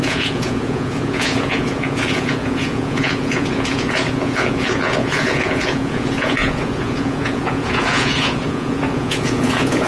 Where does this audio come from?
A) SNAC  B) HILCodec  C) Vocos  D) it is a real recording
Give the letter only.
C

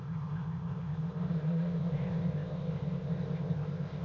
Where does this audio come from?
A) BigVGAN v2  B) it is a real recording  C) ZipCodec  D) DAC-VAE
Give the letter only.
C